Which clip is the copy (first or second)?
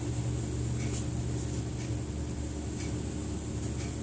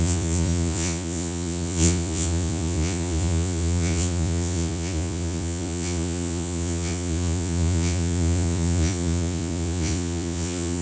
second